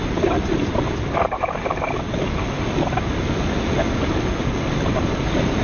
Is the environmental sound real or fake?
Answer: real